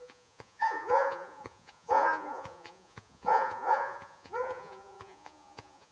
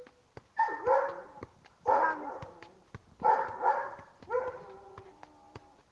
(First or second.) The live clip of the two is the second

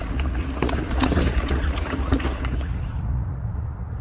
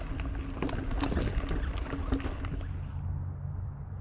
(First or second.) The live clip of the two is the second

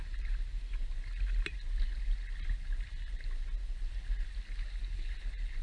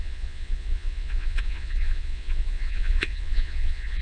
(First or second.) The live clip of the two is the first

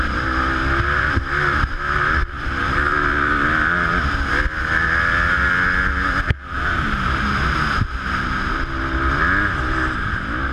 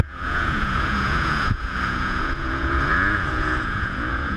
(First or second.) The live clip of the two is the first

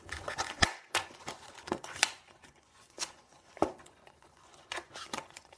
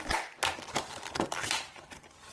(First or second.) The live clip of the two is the second